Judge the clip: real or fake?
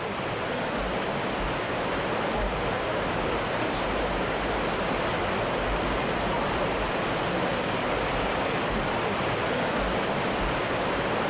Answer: real